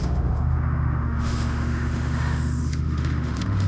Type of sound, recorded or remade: remade